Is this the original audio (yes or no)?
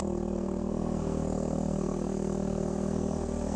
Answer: no